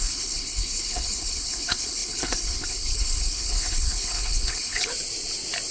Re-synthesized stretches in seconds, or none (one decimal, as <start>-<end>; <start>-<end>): 0.0-4.9